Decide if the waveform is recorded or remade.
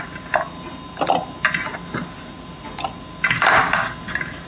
recorded